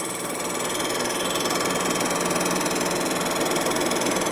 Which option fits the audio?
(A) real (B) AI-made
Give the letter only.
A